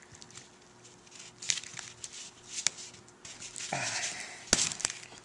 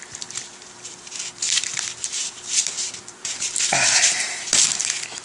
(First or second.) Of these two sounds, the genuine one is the first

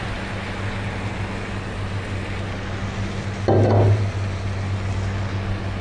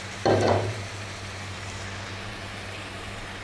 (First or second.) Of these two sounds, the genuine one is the first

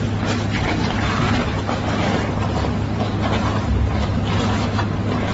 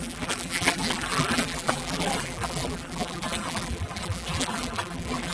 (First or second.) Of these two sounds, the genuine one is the first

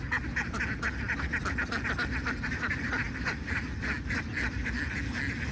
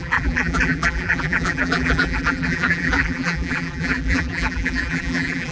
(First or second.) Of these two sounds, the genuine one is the first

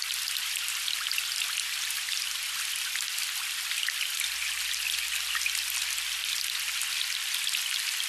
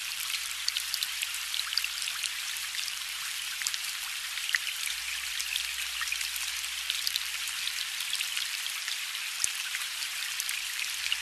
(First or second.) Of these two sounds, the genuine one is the first